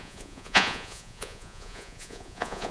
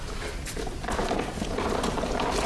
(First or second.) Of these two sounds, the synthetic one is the first